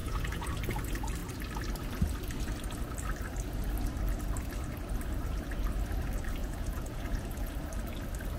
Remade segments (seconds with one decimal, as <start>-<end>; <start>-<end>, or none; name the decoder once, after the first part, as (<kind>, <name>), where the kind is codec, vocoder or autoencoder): 0.0-0.5 (vocoder, Vocos); 6.4-7.5